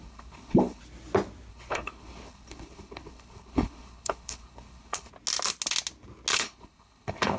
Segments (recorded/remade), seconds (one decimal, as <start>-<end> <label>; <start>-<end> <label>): 0.0-0.8 remade; 0.8-1.5 recorded; 1.5-5.1 remade; 5.1-6.3 recorded; 6.3-7.4 remade